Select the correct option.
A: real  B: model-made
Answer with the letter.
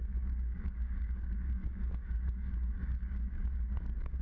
B